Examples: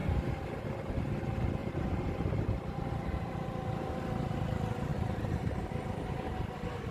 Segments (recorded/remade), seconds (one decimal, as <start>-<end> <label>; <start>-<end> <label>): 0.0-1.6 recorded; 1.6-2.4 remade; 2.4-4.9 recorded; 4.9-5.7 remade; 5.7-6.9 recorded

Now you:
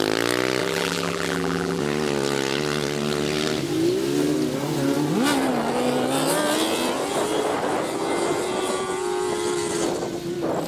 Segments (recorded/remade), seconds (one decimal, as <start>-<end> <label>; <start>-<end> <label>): 0.0-0.6 recorded; 0.6-1.8 remade; 1.8-10.7 recorded

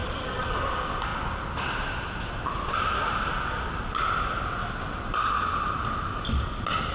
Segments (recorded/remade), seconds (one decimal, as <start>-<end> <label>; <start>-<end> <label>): 0.0-0.6 remade; 0.6-6.9 recorded

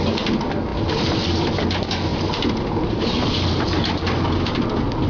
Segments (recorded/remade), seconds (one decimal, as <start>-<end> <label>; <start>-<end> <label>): 0.0-2.1 recorded; 2.1-3.1 remade; 3.1-5.1 recorded

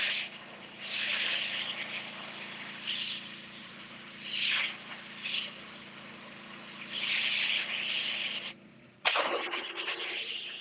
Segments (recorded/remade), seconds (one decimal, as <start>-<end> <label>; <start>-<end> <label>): 0.0-3.6 recorded; 3.6-4.3 remade; 4.3-10.6 recorded